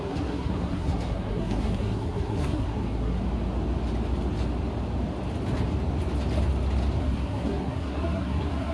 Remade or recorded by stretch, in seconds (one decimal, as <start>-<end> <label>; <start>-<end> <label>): 0.0-3.2 remade; 3.2-7.0 recorded; 7.0-8.7 remade